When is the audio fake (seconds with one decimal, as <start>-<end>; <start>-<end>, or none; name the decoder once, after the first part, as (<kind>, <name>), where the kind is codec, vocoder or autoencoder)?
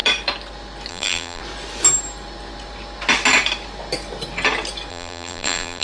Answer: 0.9-1.4 (vocoder, BigVGAN v2); 4.9-5.8